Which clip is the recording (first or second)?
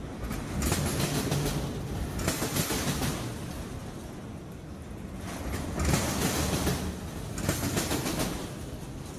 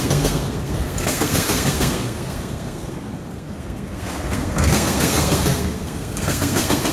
first